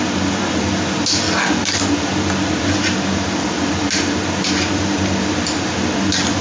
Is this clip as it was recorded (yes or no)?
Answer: yes